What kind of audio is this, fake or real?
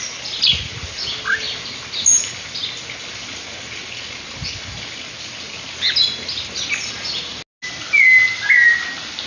real